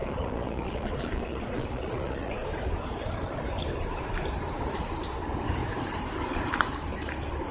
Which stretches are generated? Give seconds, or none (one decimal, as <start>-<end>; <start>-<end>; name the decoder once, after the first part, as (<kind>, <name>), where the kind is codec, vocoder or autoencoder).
0.0-2.4 (vocoder, Vocos)